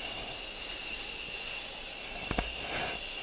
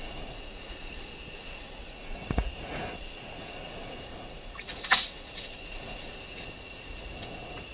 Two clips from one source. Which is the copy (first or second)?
second